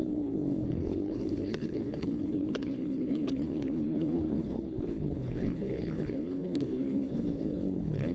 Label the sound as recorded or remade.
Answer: remade